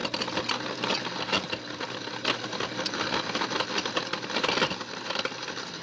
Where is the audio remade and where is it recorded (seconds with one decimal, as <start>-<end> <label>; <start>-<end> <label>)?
0.0-5.8 recorded